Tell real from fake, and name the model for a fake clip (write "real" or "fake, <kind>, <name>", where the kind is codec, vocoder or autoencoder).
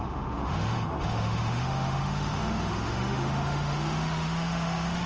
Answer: fake, autoencoder, DAC-VAE